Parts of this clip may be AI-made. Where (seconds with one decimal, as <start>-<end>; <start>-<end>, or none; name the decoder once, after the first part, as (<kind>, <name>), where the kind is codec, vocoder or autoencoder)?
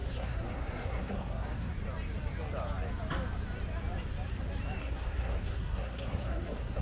0.0-1.7 (codec, SNAC); 4.8-6.8